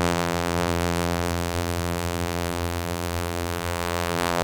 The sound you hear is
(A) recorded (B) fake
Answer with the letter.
B